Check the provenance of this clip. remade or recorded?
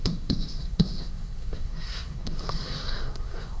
remade